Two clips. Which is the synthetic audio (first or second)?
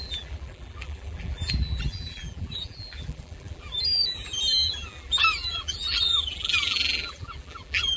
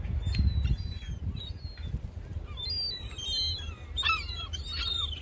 first